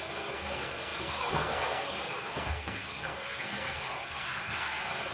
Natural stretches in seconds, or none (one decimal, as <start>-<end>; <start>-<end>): none